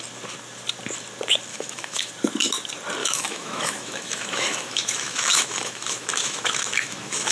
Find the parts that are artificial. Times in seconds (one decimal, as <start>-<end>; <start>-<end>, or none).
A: 1.5-2.1; 3.0-7.3